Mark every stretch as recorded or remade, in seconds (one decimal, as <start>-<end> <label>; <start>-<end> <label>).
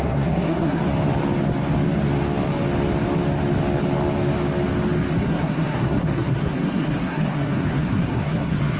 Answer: 0.0-0.8 remade; 0.8-5.2 recorded; 5.2-8.8 remade